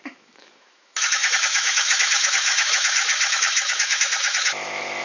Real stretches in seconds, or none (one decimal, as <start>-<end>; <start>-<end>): none